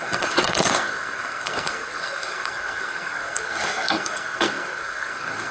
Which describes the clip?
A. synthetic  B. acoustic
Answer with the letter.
A